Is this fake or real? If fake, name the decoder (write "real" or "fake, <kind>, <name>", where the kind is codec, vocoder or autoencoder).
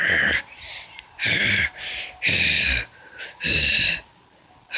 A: real